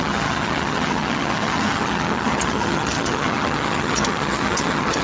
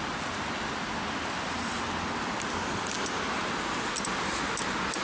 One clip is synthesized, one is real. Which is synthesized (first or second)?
first